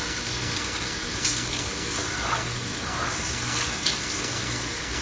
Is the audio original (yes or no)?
no